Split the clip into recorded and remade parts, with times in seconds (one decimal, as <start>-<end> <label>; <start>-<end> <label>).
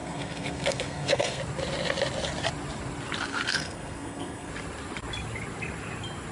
0.0-1.4 remade; 1.4-3.3 recorded; 3.3-4.5 remade; 4.5-6.3 recorded